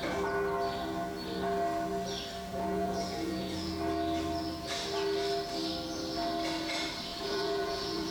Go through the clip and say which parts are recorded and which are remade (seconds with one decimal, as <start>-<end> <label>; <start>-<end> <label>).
0.0-2.5 recorded; 2.5-3.7 remade; 3.7-7.1 recorded; 7.1-8.1 remade

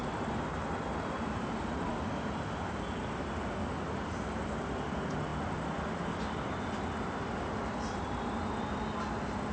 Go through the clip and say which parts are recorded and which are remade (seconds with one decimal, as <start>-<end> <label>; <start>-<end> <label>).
0.0-9.5 recorded